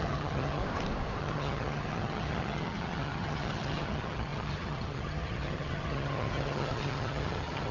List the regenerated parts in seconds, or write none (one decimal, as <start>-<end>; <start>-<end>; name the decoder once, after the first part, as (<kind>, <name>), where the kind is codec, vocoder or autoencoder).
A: 0.0-0.6 (vocoder, HiFi-GAN); 1.2-7.7